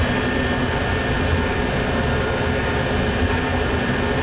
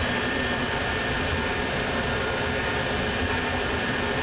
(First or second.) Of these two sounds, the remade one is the second